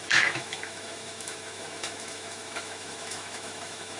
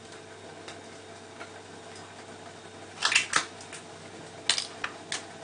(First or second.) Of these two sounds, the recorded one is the second